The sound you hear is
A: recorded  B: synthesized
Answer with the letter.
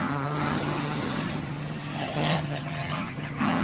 B